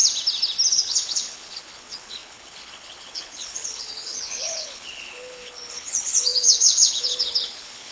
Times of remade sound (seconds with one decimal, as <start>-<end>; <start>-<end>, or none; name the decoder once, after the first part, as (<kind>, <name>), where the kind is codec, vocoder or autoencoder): 0.7-7.9 (codec, HILCodec)